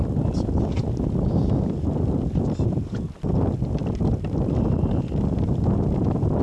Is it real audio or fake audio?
real